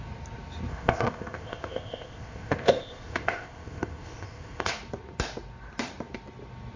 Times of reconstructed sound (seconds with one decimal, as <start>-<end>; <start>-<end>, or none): 0.7-4.7